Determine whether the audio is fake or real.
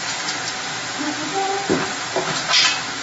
real